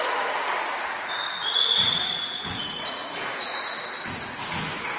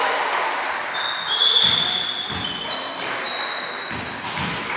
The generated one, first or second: first